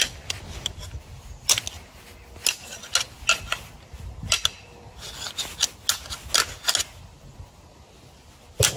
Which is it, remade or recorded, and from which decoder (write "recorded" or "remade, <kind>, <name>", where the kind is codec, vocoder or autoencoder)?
recorded